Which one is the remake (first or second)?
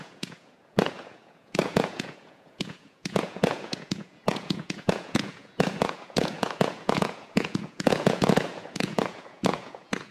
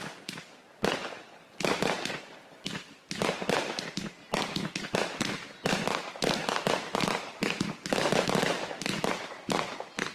first